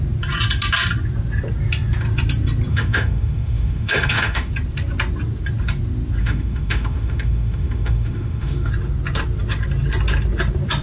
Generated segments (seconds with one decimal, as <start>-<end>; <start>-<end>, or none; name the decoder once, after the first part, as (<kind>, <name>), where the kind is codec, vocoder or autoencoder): 2.7-4.5 (autoencoder, DAC-VAE); 6.2-8.7